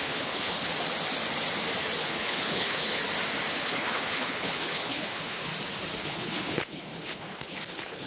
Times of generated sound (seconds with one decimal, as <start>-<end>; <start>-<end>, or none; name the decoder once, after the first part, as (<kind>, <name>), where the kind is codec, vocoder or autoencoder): 0.0-0.7 (codec, HILCodec); 2.0-3.0; 3.6-5.5; 6.0-8.1